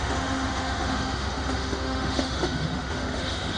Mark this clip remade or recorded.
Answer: remade